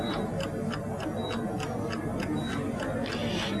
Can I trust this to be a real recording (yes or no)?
yes